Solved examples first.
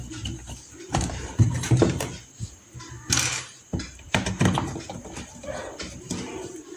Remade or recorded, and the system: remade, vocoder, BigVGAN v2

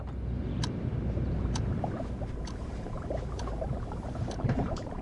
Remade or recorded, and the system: remade, vocoder, BigVGAN v2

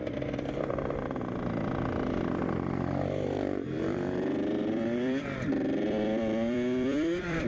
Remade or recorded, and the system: remade, vocoder, BigVGAN v2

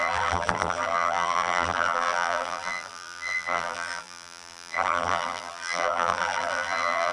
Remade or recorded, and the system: remade, vocoder, BigVGAN v2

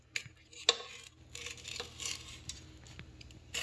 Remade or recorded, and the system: recorded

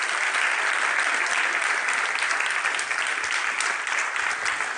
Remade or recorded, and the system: recorded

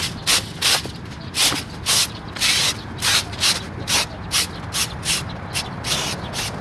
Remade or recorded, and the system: recorded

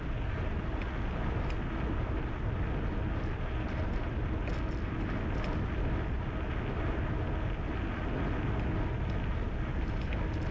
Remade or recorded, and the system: recorded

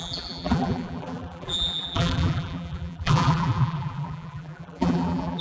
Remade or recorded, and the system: remade, vocoder, BigVGAN v2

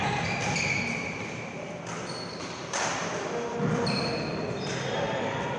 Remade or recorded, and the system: remade, vocoder, BigVGAN v2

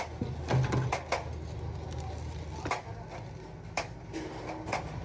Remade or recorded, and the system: recorded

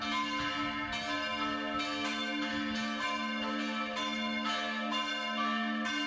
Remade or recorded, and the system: recorded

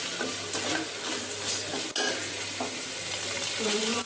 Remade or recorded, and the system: recorded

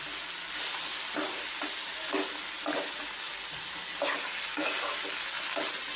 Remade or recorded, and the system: recorded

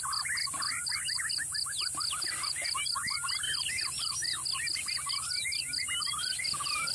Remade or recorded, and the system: recorded